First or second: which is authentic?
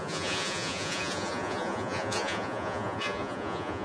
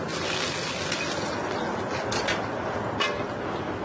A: second